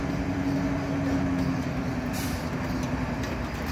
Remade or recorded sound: recorded